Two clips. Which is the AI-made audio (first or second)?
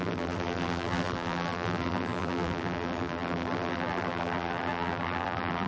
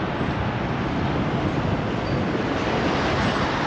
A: first